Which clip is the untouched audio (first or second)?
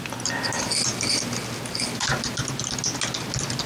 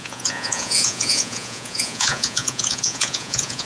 first